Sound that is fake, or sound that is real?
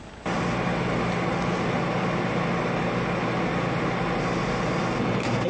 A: real